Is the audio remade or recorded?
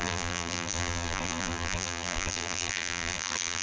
remade